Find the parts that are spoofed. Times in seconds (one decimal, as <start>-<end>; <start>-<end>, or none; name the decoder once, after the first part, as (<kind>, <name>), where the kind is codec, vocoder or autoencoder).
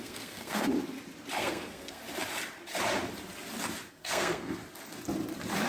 0.0-0.7 (codec, SNAC); 1.4-2.0; 3.9-4.6